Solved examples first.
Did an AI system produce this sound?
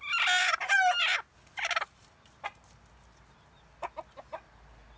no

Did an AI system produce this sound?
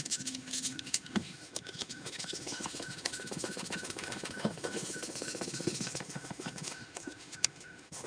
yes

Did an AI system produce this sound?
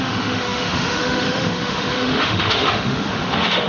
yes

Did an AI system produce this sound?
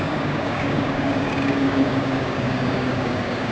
yes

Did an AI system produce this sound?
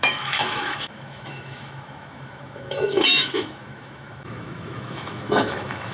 yes